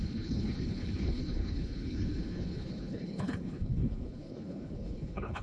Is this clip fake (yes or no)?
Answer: yes